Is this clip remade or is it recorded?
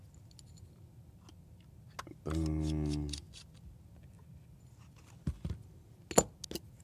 recorded